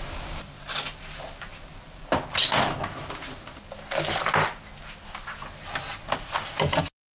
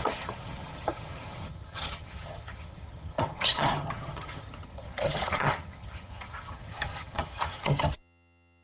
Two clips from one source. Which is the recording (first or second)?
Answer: first